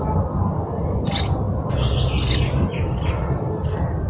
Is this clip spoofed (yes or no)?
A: no